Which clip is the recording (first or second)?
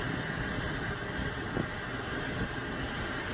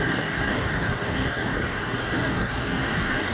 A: first